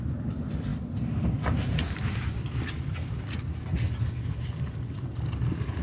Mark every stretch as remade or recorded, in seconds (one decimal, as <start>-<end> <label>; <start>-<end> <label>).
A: 0.0-5.8 recorded